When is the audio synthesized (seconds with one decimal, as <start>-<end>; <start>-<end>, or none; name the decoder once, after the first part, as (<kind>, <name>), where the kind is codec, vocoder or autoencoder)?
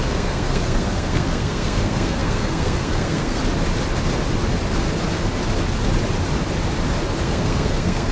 0.0-3.4 (codec, SNAC); 7.2-8.1